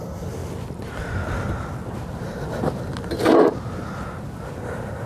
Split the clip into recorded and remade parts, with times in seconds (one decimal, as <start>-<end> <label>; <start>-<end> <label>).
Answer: 0.0-5.1 recorded